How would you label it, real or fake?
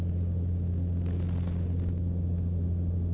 real